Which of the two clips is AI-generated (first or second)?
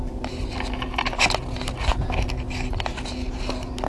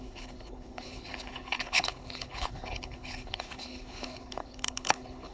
second